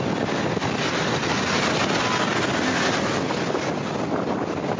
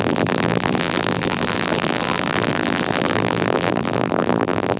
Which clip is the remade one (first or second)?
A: second